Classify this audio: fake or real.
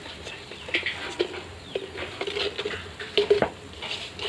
real